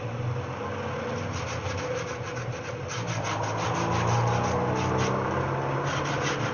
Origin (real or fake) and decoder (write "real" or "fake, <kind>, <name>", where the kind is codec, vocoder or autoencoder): real